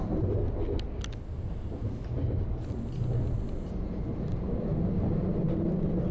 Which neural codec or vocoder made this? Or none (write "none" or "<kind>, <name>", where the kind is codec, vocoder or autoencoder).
none